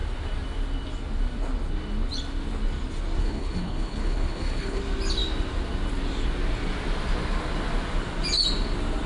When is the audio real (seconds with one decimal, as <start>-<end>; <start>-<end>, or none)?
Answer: 0.0-3.2; 4.8-9.1